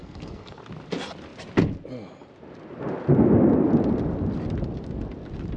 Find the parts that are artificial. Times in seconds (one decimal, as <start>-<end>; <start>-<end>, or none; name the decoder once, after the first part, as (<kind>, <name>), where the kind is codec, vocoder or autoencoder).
0.0-0.6 (codec, SNAC)